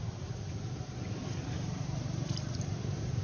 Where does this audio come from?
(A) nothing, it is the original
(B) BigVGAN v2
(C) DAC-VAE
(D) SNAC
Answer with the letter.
B